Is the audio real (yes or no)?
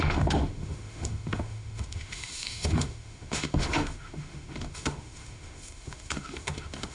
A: no